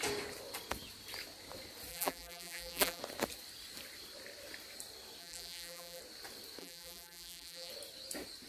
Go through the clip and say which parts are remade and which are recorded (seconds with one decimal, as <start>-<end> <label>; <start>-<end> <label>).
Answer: 0.0-1.9 recorded; 1.9-3.0 remade; 3.0-5.2 recorded; 5.2-6.0 remade; 6.0-6.6 recorded; 6.6-7.7 remade; 7.7-8.5 recorded